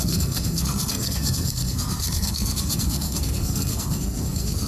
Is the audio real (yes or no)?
no